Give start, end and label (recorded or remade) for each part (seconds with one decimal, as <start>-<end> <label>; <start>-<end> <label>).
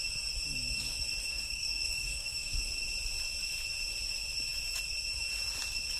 0.0-1.3 recorded; 1.3-2.6 remade; 2.6-6.0 recorded